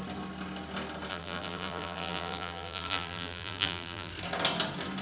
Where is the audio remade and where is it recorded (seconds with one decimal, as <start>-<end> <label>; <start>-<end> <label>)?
0.0-1.1 recorded; 1.1-4.1 remade; 4.1-5.0 recorded